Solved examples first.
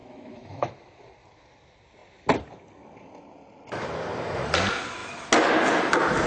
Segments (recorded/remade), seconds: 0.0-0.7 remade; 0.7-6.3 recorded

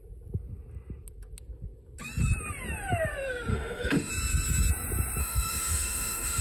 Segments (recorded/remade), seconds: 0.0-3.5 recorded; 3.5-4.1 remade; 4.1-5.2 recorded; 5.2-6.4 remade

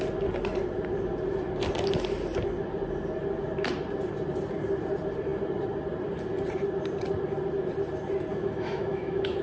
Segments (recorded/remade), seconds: 0.0-8.3 recorded; 8.3-9.4 remade